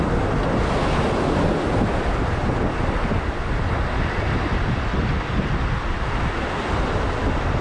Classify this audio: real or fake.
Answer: real